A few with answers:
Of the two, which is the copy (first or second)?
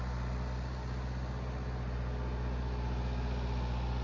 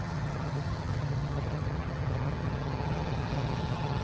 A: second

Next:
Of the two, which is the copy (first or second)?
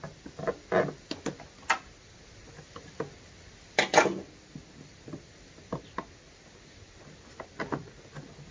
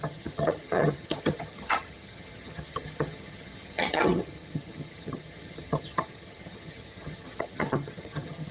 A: second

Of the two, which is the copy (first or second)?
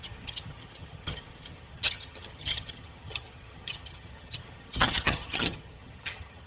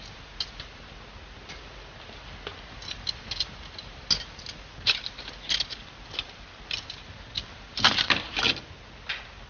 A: first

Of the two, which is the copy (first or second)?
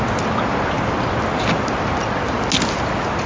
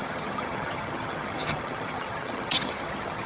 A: second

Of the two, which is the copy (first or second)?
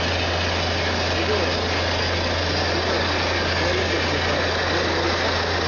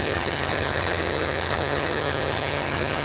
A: second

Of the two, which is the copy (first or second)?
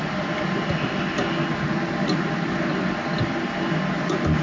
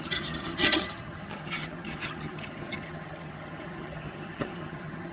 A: second